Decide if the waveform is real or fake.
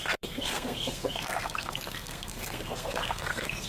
fake